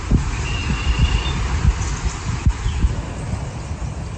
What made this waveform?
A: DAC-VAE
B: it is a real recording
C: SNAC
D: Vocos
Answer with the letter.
B